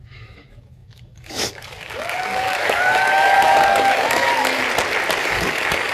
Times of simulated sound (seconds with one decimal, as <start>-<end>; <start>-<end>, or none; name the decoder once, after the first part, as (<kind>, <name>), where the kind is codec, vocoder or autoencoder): 0.0-4.6 (codec, DAC); 5.2-5.9